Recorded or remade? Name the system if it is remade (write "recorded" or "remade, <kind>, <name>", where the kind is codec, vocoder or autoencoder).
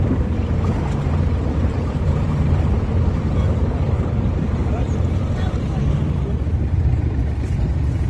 remade, vocoder, BigVGAN v2